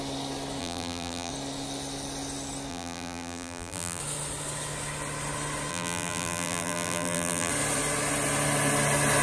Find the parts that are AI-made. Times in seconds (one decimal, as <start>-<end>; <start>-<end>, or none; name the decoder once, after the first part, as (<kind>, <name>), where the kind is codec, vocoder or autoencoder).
0.6-1.3 (vocoder, BigVGAN v2); 2.7-4.0; 5.7-7.5